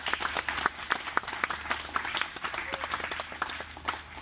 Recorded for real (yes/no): yes